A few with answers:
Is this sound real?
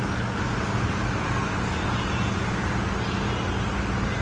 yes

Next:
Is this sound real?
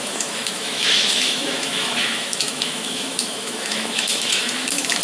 no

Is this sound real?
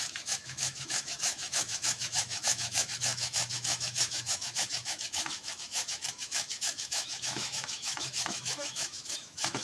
no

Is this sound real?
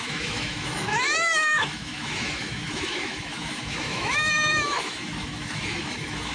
no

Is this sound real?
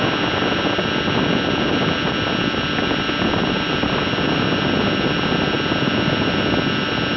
yes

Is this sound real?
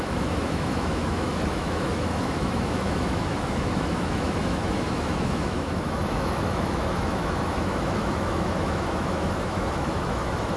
no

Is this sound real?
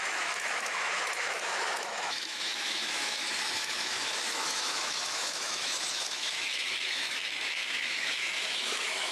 no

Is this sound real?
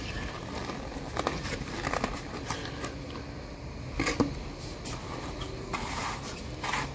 yes